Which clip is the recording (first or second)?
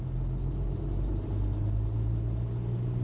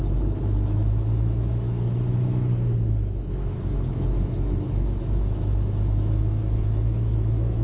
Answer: first